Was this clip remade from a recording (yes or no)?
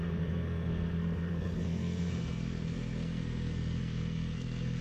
yes